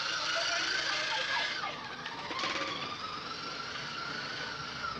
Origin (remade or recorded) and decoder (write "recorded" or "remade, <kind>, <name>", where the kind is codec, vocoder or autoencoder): recorded